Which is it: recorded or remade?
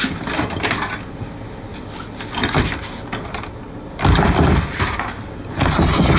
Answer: recorded